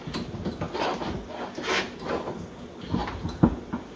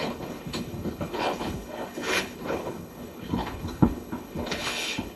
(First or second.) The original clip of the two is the first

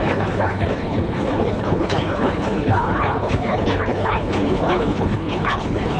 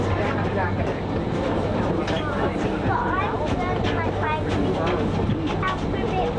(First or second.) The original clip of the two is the second